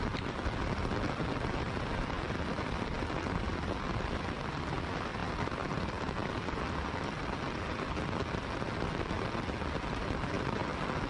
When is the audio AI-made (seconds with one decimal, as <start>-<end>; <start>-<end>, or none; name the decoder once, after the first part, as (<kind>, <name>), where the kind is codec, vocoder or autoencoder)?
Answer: none